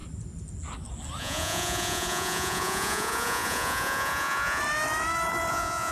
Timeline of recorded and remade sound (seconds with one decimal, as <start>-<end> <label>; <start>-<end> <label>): 0.0-1.2 recorded; 1.2-4.6 remade; 4.6-5.5 recorded; 5.5-5.9 remade